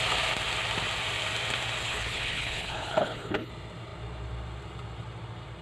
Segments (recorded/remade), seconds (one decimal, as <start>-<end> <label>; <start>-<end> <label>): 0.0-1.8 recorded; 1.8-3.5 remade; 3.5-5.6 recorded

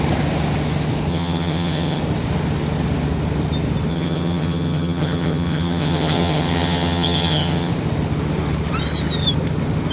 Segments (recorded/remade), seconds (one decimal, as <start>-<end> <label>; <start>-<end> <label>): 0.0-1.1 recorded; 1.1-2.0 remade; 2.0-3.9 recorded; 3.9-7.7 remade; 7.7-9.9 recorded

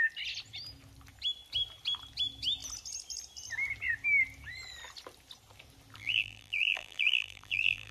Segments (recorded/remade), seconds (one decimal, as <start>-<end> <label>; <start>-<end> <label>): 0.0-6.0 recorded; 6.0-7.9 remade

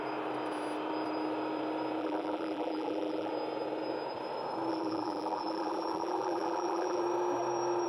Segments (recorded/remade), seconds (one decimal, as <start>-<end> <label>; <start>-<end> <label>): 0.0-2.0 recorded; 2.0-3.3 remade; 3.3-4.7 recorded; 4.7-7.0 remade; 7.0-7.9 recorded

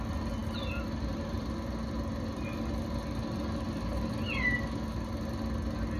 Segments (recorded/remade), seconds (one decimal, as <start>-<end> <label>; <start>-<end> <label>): 0.0-6.0 recorded

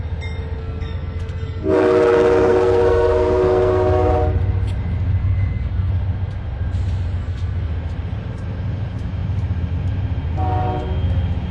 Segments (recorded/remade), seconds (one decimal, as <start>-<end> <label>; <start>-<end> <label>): 0.0-0.6 recorded; 0.6-4.1 remade; 4.1-5.2 recorded; 5.2-5.9 remade; 5.9-7.2 recorded; 7.2-7.7 remade; 7.7-11.5 recorded

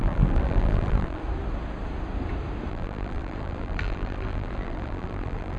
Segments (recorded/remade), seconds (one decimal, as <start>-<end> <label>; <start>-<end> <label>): 0.0-1.2 remade; 1.2-2.7 recorded; 2.7-5.6 remade

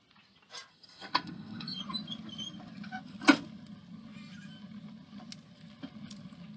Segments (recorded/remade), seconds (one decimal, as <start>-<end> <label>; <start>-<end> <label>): 0.0-0.7 recorded; 0.7-1.8 remade; 1.8-6.6 recorded